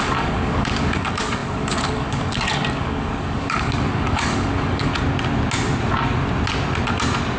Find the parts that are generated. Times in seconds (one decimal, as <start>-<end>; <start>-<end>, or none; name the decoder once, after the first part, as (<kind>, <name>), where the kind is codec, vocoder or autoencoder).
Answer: 0.0-4.9 (codec, DAC)